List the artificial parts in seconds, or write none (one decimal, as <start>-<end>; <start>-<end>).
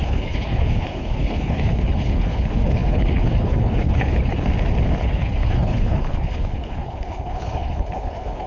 0.0-4.5; 5.0-8.5